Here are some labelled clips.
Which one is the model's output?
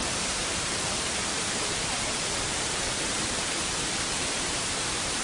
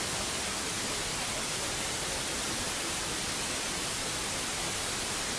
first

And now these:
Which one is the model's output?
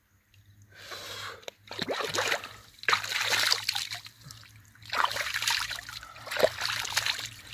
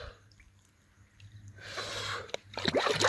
second